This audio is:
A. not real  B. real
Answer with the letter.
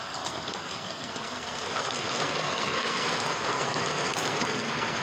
A